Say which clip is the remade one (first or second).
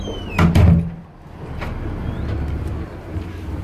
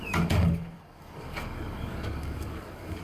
second